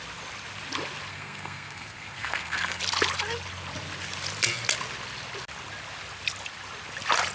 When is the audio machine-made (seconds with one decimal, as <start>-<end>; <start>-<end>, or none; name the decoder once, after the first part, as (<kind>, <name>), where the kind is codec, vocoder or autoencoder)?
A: 1.1-2.8 (codec, SNAC)